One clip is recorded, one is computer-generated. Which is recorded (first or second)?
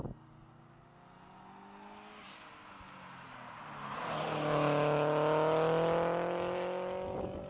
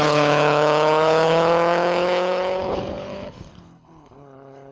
first